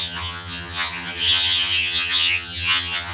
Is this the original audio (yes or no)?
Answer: no